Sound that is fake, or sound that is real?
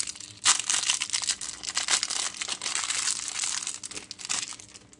real